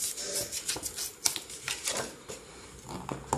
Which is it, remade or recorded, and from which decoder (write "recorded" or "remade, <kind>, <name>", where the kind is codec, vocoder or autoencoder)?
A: recorded